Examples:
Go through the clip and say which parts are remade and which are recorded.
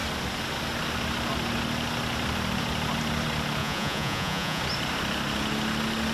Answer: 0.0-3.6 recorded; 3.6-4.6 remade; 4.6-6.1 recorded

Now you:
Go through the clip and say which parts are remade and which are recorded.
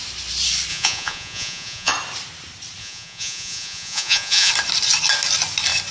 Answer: 0.0-0.7 recorded; 0.7-1.9 remade; 1.9-2.8 recorded; 2.8-4.5 remade; 4.5-5.9 recorded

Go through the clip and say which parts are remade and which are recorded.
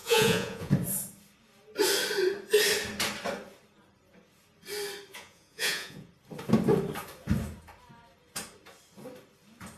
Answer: 0.0-0.7 remade; 0.7-5.1 recorded; 5.1-6.1 remade; 6.1-9.8 recorded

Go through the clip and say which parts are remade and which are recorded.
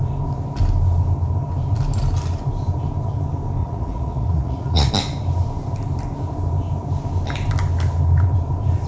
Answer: 0.0-3.6 recorded; 3.6-4.9 remade; 4.9-8.9 recorded